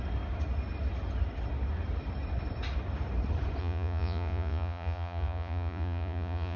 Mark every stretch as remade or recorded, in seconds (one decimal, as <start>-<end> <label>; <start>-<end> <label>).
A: 0.0-3.6 recorded; 3.6-6.6 remade